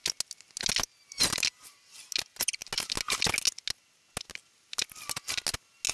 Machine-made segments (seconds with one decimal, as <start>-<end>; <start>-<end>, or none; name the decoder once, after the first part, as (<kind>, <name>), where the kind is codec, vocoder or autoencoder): none